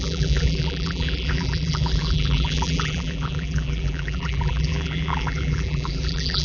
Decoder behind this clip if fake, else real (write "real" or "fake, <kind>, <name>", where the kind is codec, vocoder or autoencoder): fake, vocoder, BigVGAN v2